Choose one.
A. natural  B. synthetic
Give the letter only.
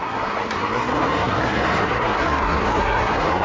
B